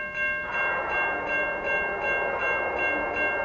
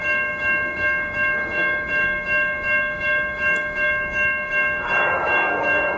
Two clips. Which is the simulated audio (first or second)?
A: second